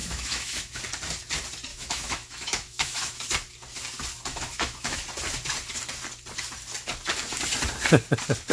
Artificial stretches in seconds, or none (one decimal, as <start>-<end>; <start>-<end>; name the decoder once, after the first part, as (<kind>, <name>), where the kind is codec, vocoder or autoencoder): 0.0-0.8 (autoencoder, DAC-VAE); 1.7-3.2; 4.3-5.0